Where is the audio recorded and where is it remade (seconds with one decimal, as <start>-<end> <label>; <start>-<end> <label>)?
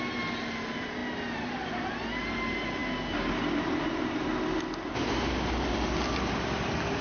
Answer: 0.0-7.0 recorded